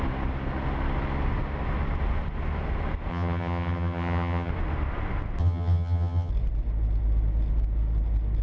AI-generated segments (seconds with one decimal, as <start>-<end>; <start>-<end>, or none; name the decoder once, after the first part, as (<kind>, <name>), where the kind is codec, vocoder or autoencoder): 3.1-4.5 (vocoder, HiFi-GAN); 5.4-6.3